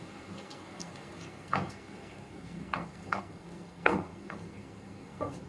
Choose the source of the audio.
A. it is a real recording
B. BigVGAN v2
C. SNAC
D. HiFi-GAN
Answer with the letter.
C